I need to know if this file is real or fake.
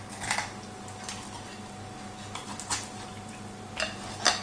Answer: real